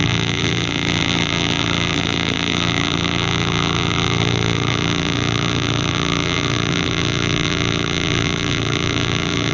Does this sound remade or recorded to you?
remade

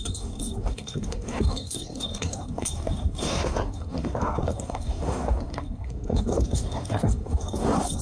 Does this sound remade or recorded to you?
remade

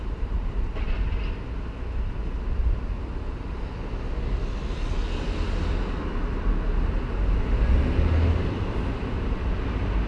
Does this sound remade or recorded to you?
recorded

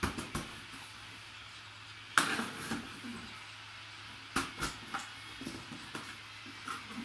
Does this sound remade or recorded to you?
recorded